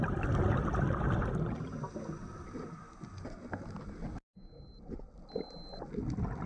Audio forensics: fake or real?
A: real